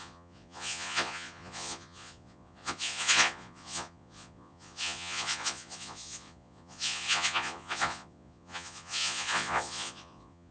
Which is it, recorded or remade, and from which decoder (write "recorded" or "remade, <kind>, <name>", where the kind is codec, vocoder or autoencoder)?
remade, vocoder, Vocos